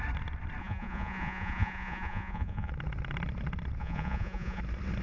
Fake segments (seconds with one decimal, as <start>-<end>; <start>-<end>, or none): 0.6-2.7; 3.8-4.6